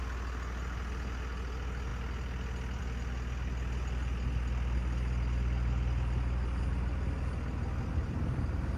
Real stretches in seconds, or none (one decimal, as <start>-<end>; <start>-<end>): 0.0-8.8